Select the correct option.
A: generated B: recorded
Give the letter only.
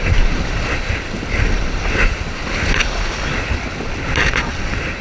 B